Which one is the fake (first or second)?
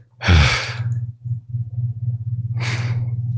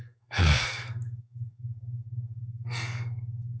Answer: second